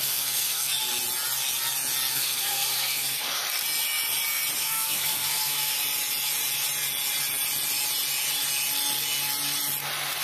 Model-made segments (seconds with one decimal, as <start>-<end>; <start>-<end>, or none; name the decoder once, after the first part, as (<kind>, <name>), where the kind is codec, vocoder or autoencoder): 0.0-0.7 (codec, SNAC); 2.1-3.4; 4.6-5.7